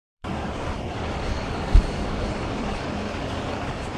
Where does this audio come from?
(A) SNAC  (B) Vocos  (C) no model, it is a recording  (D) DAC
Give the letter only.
D